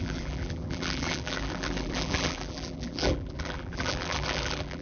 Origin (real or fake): fake